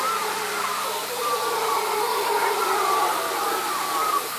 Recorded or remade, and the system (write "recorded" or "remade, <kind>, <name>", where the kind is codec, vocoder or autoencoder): remade, vocoder, BigVGAN v2